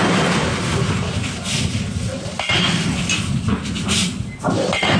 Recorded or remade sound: recorded